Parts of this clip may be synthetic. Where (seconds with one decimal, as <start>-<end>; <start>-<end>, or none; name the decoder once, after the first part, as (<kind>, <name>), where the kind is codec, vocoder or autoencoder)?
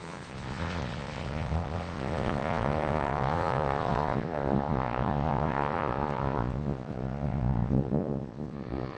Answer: 0.0-9.0 (vocoder, Vocos)